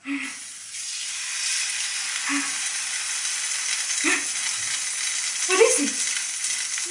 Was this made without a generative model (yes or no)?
yes